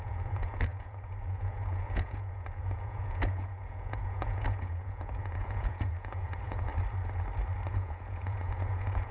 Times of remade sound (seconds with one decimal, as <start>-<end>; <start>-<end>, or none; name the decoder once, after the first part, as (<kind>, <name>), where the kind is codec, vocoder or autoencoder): 0.0-6.7 (vocoder, Vocos); 7.7-9.1